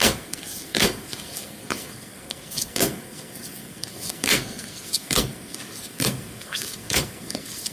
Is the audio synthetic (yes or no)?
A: yes